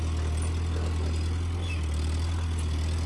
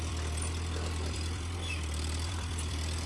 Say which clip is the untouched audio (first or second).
first